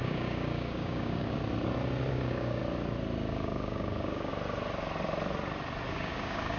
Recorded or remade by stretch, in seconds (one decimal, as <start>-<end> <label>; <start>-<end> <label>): 0.0-1.4 remade; 1.4-2.1 recorded; 2.1-2.6 remade; 2.6-3.3 recorded; 3.3-4.3 remade; 4.3-5.9 recorded; 5.9-6.6 remade